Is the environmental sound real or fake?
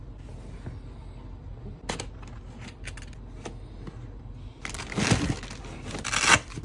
real